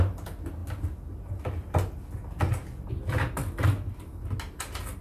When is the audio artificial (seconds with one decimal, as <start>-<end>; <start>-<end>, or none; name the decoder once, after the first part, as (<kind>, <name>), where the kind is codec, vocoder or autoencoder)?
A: none